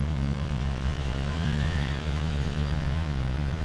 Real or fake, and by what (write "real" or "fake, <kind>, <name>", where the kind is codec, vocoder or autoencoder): fake, vocoder, Vocos